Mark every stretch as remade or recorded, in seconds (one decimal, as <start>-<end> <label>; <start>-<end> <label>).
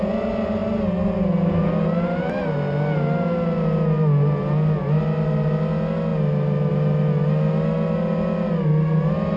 0.0-9.4 recorded